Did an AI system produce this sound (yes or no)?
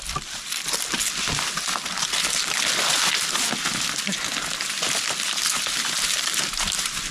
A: no